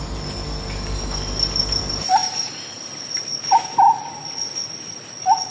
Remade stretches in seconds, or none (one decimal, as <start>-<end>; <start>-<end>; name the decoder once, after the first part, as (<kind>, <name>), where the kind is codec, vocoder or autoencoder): none